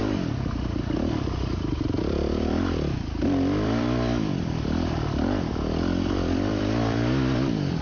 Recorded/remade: remade